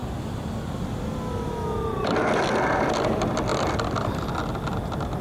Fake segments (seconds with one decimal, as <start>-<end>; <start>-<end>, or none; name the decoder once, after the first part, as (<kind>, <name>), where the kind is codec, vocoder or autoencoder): none